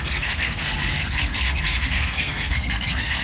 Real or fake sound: fake